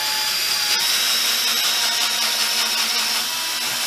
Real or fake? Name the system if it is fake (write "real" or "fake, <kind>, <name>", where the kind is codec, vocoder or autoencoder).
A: real